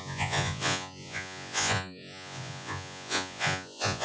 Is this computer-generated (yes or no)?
yes